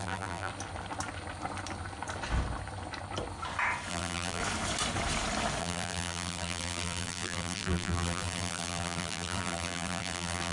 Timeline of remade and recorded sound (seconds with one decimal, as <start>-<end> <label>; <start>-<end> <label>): 0.0-0.5 remade; 0.5-3.9 recorded; 3.9-4.4 remade; 4.4-5.6 recorded; 5.6-10.5 remade